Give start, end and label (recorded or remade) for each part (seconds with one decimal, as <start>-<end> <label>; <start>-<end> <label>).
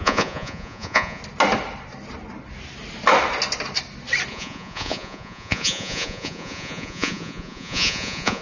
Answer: 0.0-1.2 remade; 1.2-4.3 recorded; 4.3-8.4 remade